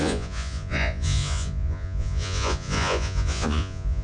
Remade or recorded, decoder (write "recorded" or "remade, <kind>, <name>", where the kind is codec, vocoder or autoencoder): remade, vocoder, Vocos